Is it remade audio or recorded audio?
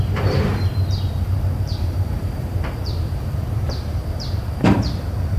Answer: remade